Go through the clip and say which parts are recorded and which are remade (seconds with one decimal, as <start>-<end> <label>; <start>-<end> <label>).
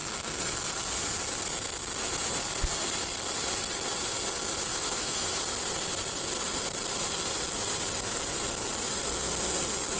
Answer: 0.0-4.7 recorded; 4.7-5.4 remade; 5.4-10.0 recorded